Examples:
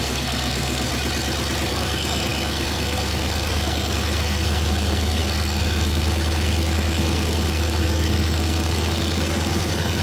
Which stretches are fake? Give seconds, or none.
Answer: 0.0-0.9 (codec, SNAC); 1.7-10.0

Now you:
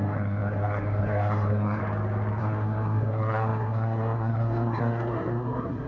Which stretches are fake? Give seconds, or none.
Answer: 0.0-1.8 (codec, SNAC); 2.4-5.9